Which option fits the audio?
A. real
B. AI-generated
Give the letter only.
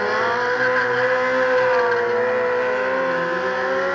A